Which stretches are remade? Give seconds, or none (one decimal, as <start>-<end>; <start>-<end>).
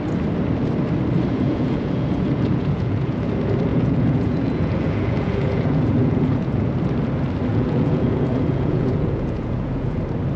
1.3-3.2; 3.7-6.7; 7.5-10.0